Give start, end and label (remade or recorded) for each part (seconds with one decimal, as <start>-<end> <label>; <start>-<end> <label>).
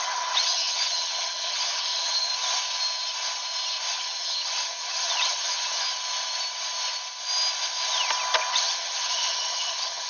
0.0-2.3 remade; 2.3-3.9 recorded; 3.9-5.9 remade; 5.9-8.5 recorded; 8.5-10.1 remade